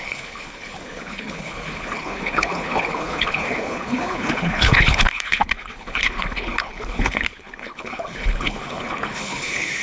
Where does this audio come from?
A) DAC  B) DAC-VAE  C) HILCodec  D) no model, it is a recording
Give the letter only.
C